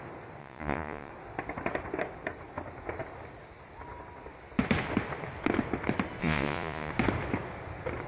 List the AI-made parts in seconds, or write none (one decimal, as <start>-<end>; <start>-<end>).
0.4-1.1; 6.2-6.9